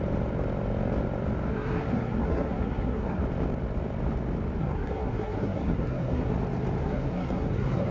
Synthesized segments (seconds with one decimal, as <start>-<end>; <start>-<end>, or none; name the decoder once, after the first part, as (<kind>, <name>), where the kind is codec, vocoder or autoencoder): 1.5-3.2 (codec, SNAC); 4.6-6.3; 6.8-7.9